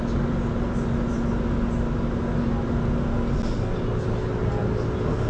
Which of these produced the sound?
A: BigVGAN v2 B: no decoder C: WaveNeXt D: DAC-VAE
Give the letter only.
B